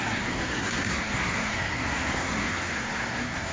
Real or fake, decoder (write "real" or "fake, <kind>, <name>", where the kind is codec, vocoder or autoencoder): fake, codec, SNAC